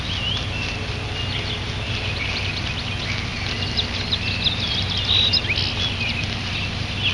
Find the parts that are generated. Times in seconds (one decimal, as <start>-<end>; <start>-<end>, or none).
none